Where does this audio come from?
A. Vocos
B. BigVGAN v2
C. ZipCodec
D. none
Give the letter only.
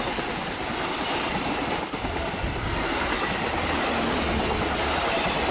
D